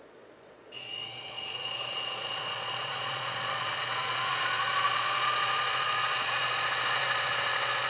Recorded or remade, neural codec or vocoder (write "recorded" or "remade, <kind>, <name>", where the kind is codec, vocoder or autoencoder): remade, vocoder, Vocos